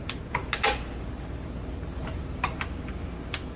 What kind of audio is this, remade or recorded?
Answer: recorded